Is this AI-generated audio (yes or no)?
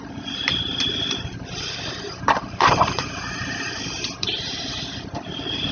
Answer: yes